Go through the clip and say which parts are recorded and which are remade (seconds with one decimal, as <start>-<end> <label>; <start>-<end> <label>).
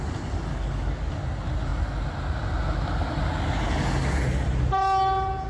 0.0-0.5 recorded; 0.5-1.1 remade; 1.1-5.5 recorded